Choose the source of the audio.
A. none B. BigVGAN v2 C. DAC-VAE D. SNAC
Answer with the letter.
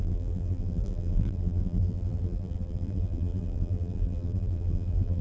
B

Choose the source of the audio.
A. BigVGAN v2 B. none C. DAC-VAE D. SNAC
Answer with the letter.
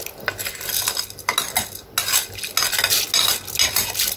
B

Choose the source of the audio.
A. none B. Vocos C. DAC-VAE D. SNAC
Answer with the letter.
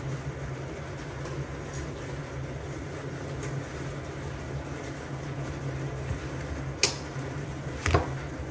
A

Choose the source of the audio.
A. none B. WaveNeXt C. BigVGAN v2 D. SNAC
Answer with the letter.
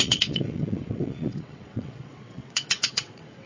B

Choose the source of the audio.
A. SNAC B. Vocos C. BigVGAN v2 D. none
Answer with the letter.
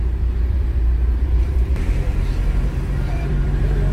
C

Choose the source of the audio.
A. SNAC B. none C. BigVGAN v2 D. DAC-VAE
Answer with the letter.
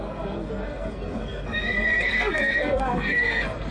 A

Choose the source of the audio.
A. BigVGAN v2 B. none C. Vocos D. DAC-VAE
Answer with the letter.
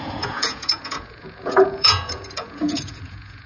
C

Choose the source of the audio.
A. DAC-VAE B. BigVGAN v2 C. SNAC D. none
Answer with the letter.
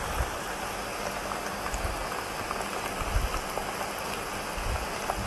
D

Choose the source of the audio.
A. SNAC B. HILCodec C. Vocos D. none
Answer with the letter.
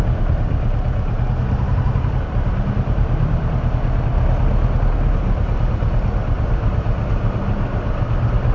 D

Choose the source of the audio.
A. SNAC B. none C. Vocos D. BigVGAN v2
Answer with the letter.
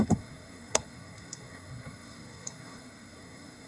A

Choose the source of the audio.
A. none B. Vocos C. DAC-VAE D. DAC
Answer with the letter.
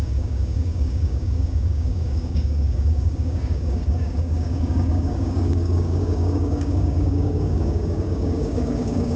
D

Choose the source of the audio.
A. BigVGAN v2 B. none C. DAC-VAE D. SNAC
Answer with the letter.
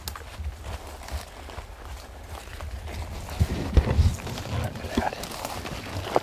B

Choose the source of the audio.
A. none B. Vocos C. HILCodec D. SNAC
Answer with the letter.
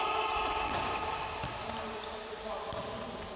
A